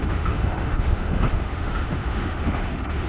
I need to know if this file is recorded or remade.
remade